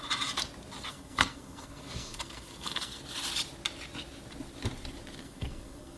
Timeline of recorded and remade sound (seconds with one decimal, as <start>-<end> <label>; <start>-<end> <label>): 0.0-0.9 recorded; 0.9-3.0 remade; 3.0-5.2 recorded; 5.2-6.0 remade